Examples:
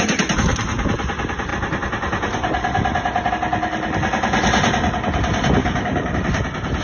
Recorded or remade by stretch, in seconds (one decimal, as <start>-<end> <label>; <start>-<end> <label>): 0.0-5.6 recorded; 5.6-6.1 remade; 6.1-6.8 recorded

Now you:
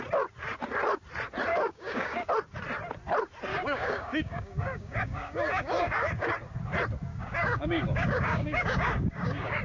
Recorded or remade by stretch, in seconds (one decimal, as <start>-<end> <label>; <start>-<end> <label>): 0.0-1.5 recorded; 1.5-2.3 remade; 2.3-3.5 recorded; 3.5-6.3 remade; 6.3-7.1 recorded; 7.1-9.6 remade

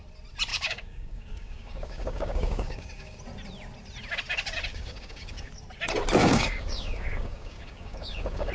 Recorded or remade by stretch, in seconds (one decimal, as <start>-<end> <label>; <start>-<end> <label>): 0.0-0.5 recorded; 0.5-3.2 remade; 3.2-4.7 recorded; 4.7-5.5 remade; 5.5-6.2 recorded; 6.2-8.5 remade

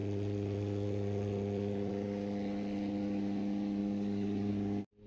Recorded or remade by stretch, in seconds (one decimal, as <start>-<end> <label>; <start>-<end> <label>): 0.0-3.8 recorded; 3.8-4.5 remade; 4.5-5.1 recorded